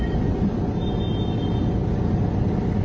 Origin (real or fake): real